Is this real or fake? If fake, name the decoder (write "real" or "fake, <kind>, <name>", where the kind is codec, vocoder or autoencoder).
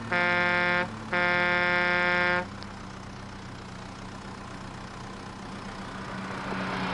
real